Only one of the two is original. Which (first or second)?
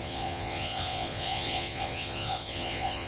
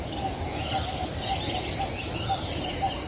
second